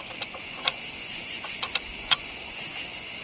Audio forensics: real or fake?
fake